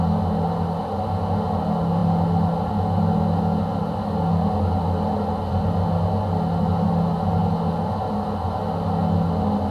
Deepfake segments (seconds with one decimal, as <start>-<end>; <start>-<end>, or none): none